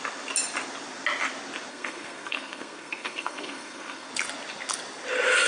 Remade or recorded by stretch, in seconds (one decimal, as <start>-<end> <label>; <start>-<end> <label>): 0.0-1.7 recorded; 1.7-4.1 remade; 4.1-5.5 recorded